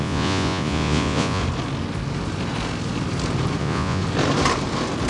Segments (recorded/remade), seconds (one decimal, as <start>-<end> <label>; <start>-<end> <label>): 0.0-1.4 remade; 1.4-3.6 recorded; 3.6-4.0 remade; 4.0-5.1 recorded